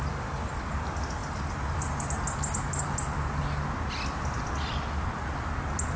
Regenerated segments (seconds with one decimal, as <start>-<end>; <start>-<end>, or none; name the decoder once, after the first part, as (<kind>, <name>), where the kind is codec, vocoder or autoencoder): none